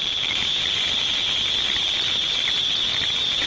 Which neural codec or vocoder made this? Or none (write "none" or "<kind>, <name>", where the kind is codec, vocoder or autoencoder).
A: vocoder, BigVGAN v2